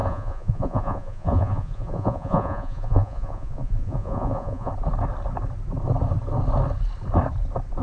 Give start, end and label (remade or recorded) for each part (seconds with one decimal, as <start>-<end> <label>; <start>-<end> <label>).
0.0-4.7 remade; 4.7-7.8 recorded